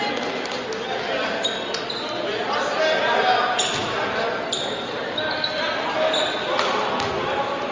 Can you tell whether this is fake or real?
real